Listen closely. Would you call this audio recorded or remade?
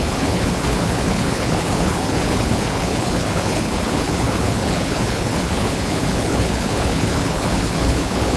remade